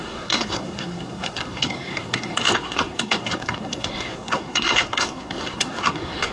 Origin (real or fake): fake